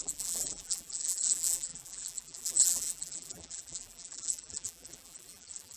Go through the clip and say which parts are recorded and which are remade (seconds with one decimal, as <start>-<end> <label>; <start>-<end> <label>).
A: 0.0-5.8 remade

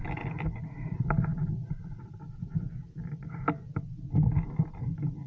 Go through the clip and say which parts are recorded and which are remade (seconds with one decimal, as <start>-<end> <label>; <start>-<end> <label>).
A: 0.0-5.3 recorded

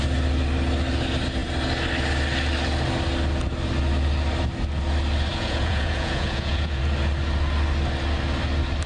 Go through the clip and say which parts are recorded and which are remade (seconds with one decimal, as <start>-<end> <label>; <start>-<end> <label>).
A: 0.0-5.3 recorded; 5.3-6.8 remade; 6.8-8.9 recorded

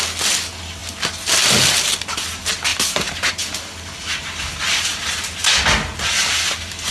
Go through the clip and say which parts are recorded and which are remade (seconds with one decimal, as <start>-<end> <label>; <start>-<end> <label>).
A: 0.0-6.9 recorded

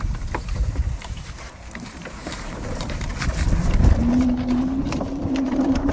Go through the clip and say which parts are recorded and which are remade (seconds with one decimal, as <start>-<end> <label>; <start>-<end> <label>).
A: 0.0-3.1 remade; 3.1-3.6 recorded; 3.6-4.0 remade; 4.0-4.8 recorded; 4.8-5.9 remade

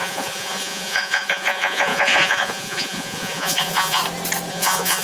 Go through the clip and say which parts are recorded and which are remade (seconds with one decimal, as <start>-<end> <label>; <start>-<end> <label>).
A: 0.0-4.0 remade; 4.0-4.5 recorded; 4.5-5.0 remade